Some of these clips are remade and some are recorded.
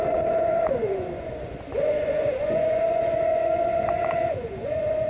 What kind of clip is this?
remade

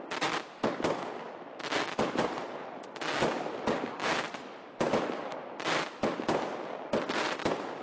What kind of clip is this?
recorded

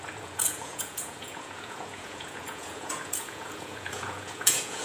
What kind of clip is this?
remade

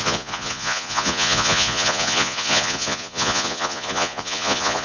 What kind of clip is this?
remade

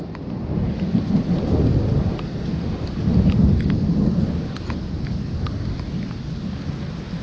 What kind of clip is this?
recorded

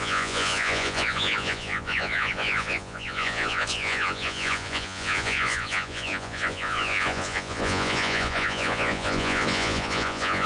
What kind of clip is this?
remade